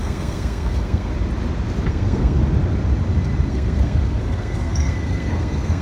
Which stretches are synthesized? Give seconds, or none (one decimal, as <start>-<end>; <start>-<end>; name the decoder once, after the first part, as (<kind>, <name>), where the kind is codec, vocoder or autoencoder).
0.0-1.1 (codec, SNAC); 1.9-2.4; 3.5-5.8